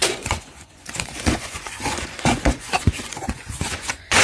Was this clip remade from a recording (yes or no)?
yes